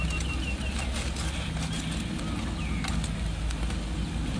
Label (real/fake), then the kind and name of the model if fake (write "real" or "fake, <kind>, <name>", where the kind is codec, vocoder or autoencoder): real